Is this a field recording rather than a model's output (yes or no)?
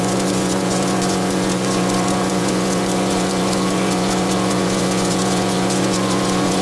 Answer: no